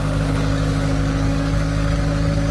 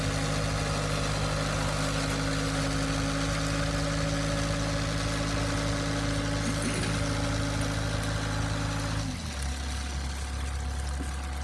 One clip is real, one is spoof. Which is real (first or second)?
second